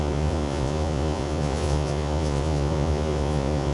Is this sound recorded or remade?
remade